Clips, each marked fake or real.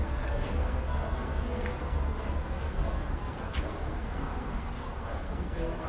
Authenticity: fake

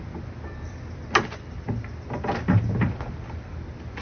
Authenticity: real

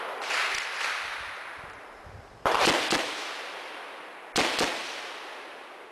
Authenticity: real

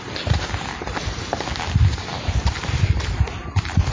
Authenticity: real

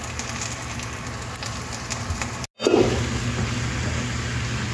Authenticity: real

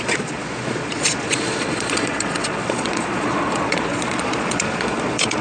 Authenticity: fake